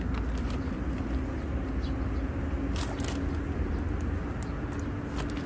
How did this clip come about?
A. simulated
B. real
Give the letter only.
B